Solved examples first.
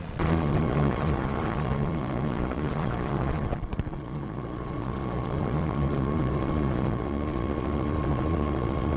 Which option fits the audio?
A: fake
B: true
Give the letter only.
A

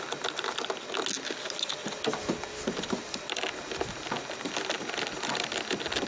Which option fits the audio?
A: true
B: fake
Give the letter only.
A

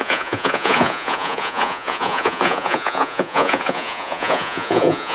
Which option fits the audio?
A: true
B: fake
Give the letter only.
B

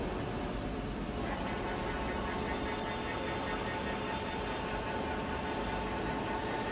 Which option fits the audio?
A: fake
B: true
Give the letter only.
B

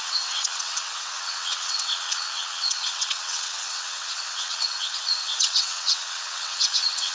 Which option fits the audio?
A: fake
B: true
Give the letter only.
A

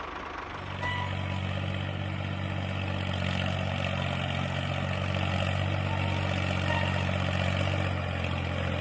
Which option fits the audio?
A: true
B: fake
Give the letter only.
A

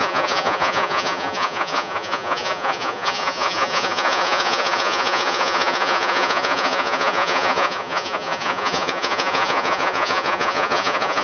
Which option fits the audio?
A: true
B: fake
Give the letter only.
B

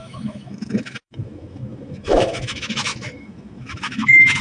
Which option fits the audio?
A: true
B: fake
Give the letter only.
B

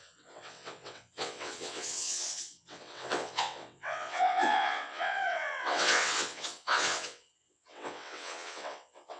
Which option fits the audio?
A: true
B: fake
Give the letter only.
B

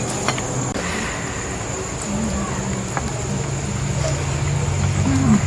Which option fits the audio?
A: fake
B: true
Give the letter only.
B